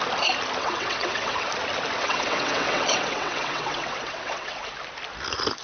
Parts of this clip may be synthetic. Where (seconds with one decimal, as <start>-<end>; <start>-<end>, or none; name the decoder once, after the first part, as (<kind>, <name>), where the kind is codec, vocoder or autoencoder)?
0.6-1.5 (vocoder, WaveNeXt); 2.0-4.7